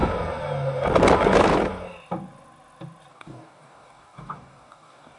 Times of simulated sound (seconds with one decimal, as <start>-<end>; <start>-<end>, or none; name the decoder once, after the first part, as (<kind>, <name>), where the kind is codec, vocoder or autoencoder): 3.1-5.2 (codec, DAC)

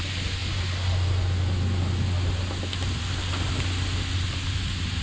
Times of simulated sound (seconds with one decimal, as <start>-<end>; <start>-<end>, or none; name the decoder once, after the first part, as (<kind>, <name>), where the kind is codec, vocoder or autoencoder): none

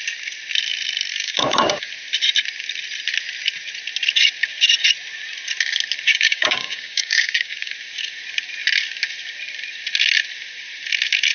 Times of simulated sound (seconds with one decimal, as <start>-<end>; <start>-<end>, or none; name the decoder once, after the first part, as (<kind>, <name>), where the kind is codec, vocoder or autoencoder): 1.1-1.9 (codec, DAC); 6.1-7.7

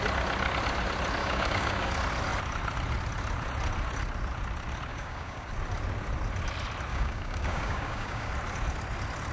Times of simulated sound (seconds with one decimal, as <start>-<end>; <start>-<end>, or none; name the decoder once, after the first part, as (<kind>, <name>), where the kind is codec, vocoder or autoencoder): 1.2-1.9 (codec, DAC); 4.9-5.5; 6.9-8.3

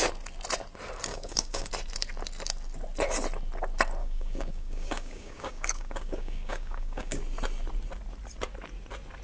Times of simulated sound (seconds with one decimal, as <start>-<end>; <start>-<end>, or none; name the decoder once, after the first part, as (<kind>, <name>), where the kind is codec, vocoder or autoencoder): 1.1-1.7 (codec, DAC); 4.0-7.2

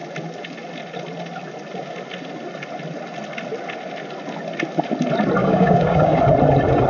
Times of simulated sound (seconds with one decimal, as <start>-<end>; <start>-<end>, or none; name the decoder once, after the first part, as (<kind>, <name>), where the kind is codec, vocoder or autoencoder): 5.4-6.2 (codec, DAC)

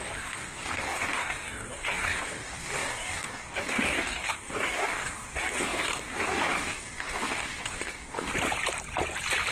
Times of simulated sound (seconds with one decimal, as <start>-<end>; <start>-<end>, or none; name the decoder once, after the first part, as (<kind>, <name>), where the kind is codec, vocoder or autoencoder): 0.0-8.3 (codec, DAC)

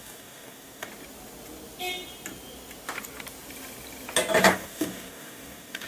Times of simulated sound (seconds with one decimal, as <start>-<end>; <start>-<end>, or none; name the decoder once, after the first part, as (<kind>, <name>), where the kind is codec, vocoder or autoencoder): 0.0-0.9 (codec, DAC); 4.4-5.9